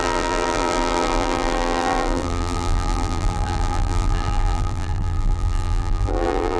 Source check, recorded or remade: remade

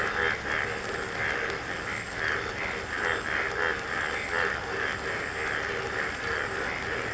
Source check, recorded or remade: recorded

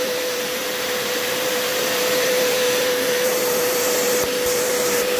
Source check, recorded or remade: remade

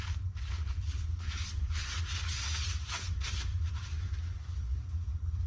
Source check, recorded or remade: recorded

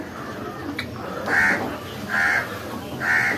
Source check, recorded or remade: recorded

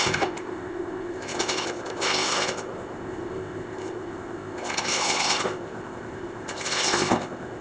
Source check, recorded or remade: remade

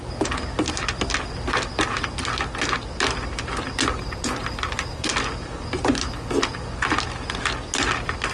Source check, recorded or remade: recorded